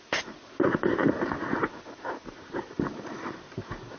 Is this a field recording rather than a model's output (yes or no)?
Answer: yes